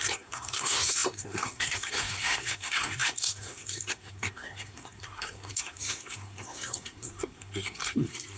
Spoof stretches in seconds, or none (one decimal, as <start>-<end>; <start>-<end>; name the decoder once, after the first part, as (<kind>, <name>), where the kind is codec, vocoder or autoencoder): 0.0-8.4 (codec, SNAC)